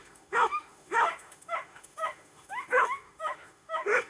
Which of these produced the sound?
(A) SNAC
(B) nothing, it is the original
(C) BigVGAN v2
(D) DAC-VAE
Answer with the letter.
D